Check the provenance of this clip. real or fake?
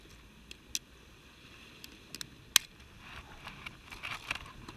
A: real